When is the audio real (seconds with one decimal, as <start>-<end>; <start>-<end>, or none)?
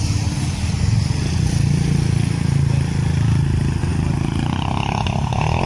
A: 0.0-5.7